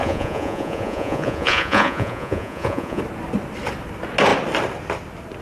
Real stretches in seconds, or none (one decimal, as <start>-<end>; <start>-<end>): 3.0-5.4